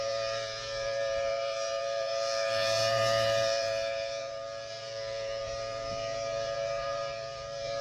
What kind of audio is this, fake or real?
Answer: fake